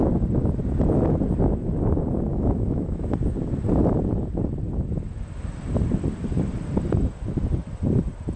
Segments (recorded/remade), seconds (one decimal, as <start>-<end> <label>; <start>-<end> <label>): 0.0-2.3 recorded; 2.3-3.0 remade; 3.0-8.4 recorded